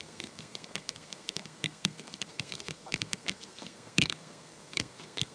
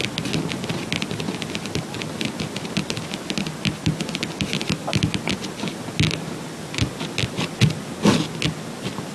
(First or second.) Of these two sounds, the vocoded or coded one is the first